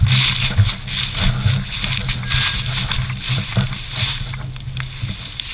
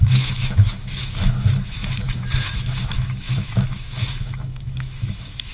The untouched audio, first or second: first